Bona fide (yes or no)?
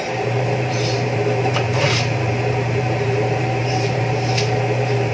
no